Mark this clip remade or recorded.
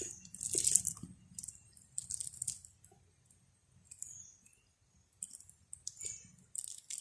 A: recorded